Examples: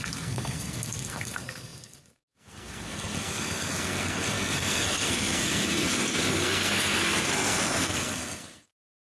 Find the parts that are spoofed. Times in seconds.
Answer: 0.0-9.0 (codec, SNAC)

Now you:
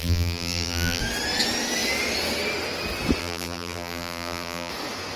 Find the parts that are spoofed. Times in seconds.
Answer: 0.0-1.0 (vocoder, BigVGAN v2); 3.2-4.7

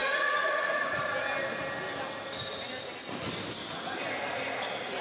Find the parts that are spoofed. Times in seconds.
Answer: 0.0-1.1 (vocoder, Vocos)

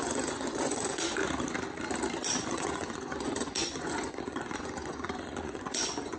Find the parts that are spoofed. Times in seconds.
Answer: 0.0-1.2 (vocoder, Vocos); 2.5-6.2